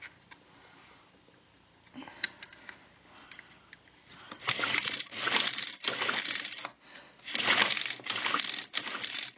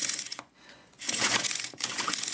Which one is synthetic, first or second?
second